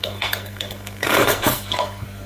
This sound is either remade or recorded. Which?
remade